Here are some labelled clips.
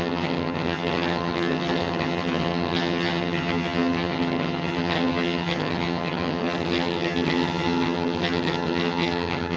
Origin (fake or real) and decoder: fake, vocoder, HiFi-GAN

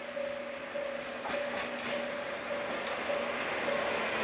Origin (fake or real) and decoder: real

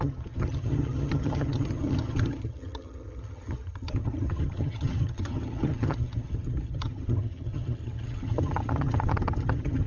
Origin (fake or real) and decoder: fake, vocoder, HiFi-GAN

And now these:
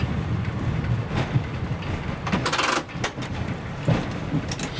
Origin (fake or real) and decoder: real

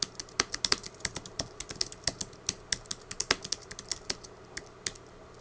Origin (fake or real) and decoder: real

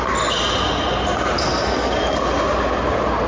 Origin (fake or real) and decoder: real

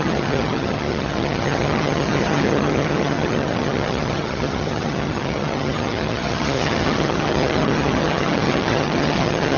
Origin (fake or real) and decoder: fake, vocoder, HiFi-GAN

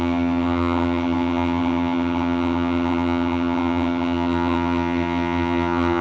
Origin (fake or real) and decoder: fake, vocoder, HiFi-GAN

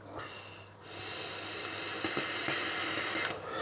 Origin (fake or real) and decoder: real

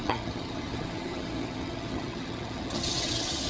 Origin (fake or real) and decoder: fake, vocoder, HiFi-GAN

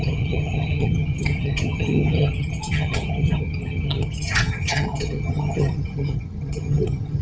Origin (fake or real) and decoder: fake, vocoder, HiFi-GAN